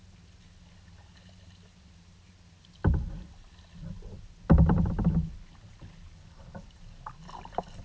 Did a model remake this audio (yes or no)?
no